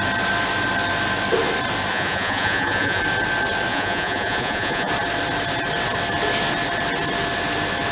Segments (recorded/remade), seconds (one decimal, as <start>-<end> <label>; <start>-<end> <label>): 0.0-1.9 recorded; 1.9-3.0 remade; 3.0-3.7 recorded; 3.7-4.9 remade; 4.9-7.9 recorded